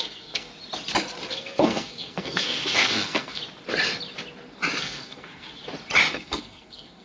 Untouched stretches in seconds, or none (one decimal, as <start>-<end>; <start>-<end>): 0.5-1.3; 3.4-4.8; 5.6-6.1